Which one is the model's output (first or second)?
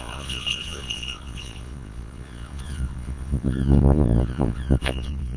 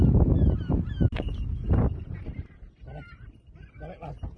first